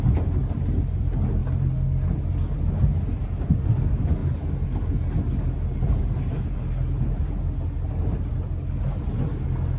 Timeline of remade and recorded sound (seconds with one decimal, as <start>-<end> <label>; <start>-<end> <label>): 0.0-9.8 recorded